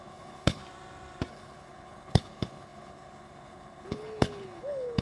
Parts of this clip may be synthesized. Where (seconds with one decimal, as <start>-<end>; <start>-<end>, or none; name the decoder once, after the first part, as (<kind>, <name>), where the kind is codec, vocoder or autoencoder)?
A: 0.0-0.6 (codec, HILCodec); 1.3-5.0